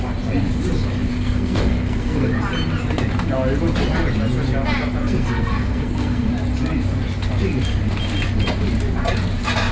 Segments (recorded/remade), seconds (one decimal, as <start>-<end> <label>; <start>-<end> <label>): 0.0-1.1 recorded; 1.1-2.3 remade; 2.3-5.0 recorded; 5.0-6.3 remade; 6.3-9.7 recorded